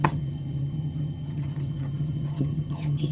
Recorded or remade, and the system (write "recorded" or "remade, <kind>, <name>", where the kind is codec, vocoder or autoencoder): remade, vocoder, HiFi-GAN